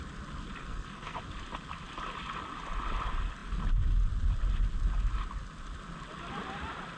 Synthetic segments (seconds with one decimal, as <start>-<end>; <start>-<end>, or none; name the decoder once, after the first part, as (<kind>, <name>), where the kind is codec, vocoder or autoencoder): 0.6-1.2 (codec, SNAC)